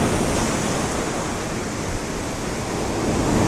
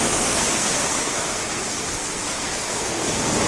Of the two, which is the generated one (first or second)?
second